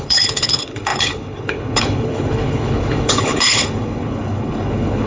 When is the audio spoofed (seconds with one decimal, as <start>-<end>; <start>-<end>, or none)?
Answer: 0.0-5.1